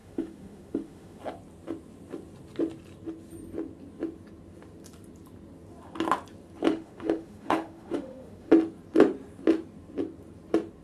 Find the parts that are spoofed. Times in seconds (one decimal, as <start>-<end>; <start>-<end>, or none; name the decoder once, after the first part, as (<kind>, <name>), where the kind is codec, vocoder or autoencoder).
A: 0.0-1.2 (autoencoder, DAC-VAE); 6.7-8.5